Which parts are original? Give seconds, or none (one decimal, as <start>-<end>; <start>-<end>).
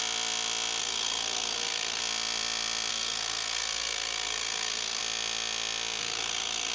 0.0-0.8; 2.0-2.9; 5.0-6.0